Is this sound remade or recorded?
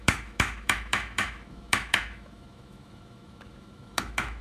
remade